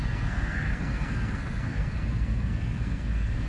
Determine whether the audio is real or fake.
fake